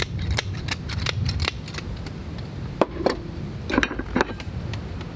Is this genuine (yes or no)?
yes